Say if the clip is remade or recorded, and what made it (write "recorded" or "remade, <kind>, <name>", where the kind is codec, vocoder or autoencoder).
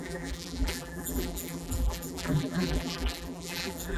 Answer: remade, vocoder, BigVGAN v2